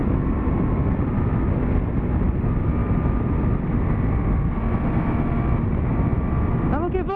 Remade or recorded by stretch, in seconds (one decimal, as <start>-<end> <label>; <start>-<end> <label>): 0.0-7.2 recorded

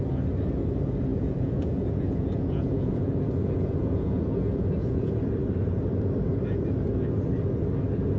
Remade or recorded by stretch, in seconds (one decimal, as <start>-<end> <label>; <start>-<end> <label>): 0.0-1.1 recorded; 1.1-5.2 remade; 5.2-8.2 recorded

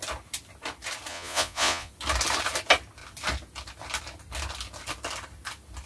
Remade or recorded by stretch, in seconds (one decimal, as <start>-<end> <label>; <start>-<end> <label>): 0.0-1.1 recorded; 1.1-1.9 remade; 1.9-5.9 recorded

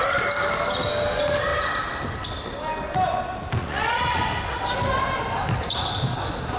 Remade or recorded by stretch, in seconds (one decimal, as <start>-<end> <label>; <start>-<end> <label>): 0.0-3.6 recorded; 3.6-4.2 remade; 4.2-6.6 recorded

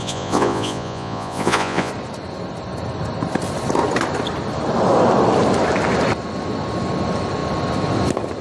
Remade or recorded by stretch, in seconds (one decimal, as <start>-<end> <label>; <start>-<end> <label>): 0.0-1.9 remade; 1.9-8.4 recorded

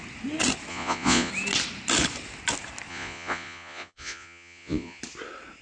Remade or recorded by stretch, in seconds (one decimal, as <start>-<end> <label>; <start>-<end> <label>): 0.0-0.7 recorded; 0.7-1.3 remade; 1.3-2.9 recorded; 2.9-5.0 remade; 5.0-5.6 recorded